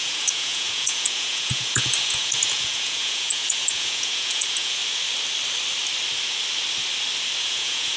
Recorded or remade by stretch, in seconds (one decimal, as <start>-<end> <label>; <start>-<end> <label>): 0.0-4.8 remade; 4.8-7.4 recorded; 7.4-8.0 remade